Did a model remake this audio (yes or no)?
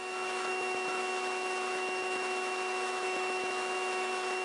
yes